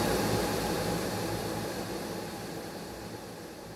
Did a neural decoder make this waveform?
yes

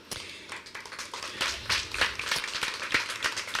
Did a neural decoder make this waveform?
no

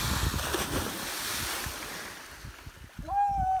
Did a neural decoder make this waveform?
no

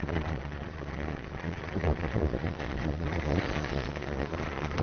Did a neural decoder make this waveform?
yes